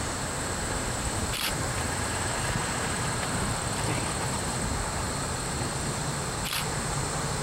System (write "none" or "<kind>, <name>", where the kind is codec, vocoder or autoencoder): vocoder, BigVGAN v2